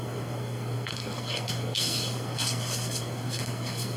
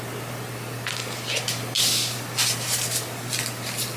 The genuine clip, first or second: second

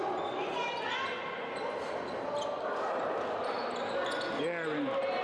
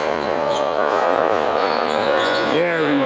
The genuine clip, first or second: first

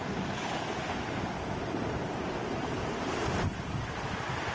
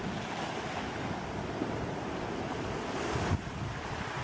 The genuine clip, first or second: second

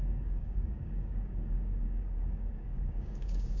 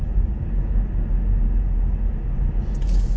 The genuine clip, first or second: second